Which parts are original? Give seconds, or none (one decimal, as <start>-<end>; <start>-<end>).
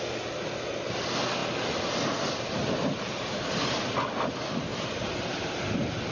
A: 0.0-3.3; 3.8-4.7